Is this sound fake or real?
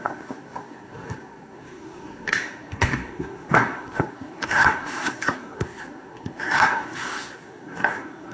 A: fake